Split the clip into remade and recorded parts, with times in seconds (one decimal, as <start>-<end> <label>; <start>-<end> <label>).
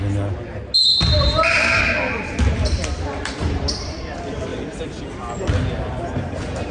0.0-6.7 recorded